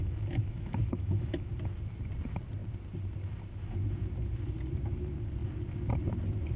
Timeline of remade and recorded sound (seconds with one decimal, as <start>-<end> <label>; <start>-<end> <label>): 0.0-1.5 remade; 1.5-6.6 recorded